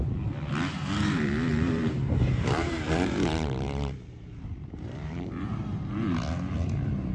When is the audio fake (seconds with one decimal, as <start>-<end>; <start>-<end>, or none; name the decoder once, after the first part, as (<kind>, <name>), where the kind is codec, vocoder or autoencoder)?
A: 1.5-5.8 (vocoder, BigVGAN v2)